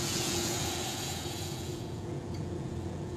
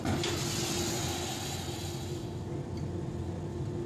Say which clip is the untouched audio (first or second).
second